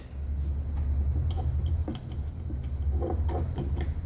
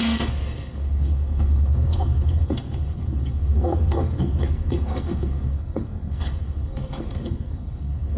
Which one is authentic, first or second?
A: first